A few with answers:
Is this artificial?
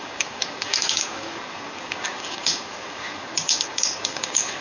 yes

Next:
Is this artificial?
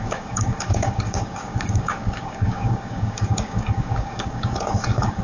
yes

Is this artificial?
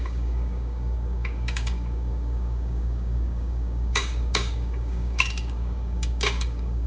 yes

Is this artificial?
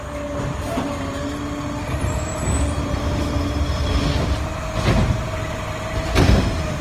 no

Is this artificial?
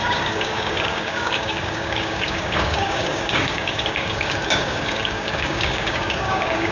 yes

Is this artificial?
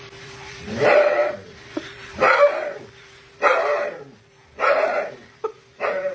no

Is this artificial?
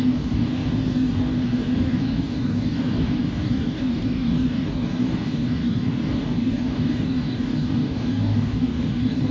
yes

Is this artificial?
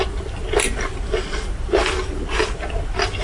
no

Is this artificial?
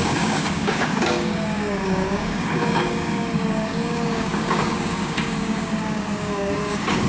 yes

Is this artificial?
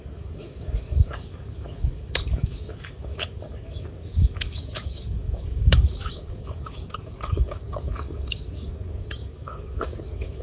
yes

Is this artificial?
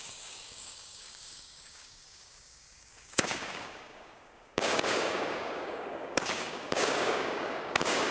yes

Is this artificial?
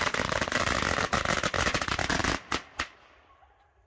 no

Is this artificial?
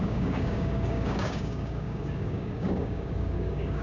yes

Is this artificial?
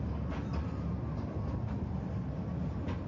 no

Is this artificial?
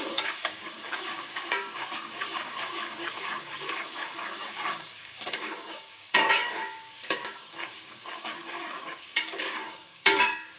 yes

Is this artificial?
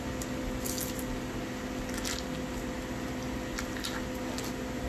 no